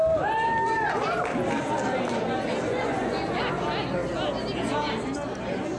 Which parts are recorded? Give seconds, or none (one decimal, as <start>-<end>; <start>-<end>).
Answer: 0.0-2.7; 3.4-5.8